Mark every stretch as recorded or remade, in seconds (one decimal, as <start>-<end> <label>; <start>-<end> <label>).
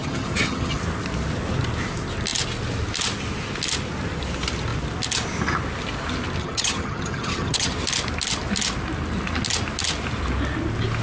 0.0-0.8 remade; 0.8-6.4 recorded; 6.4-7.7 remade; 7.7-11.0 recorded